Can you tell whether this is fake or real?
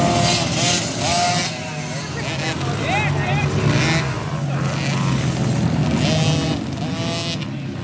real